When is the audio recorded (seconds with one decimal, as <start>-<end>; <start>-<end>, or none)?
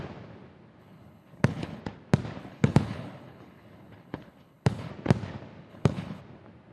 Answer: 0.0-0.8; 1.8-2.4; 4.9-5.7; 6.2-6.7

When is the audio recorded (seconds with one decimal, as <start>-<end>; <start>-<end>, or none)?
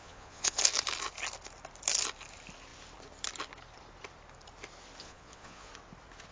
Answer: 0.6-5.0; 5.7-6.3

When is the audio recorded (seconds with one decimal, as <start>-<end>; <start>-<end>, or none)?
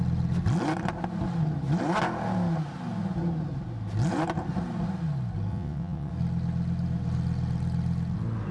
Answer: 0.0-5.5; 6.1-8.5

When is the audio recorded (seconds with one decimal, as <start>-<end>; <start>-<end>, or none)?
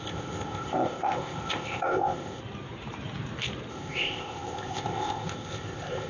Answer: 2.4-3.7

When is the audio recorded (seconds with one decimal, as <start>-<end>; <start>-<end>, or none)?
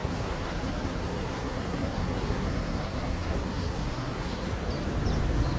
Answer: 4.5-5.6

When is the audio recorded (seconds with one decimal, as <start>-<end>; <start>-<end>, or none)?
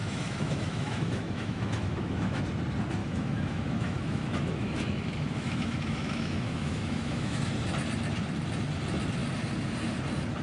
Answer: 2.4-3.0; 7.4-10.4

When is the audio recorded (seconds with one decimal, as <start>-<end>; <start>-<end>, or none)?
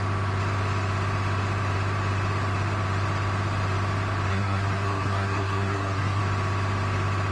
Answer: 0.0-4.3; 6.2-7.3